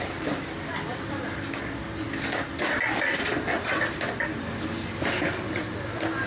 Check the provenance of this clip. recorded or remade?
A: recorded